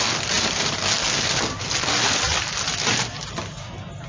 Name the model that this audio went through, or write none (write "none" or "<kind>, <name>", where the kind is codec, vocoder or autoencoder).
none